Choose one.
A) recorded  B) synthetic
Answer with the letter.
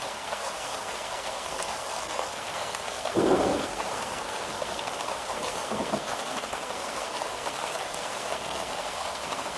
B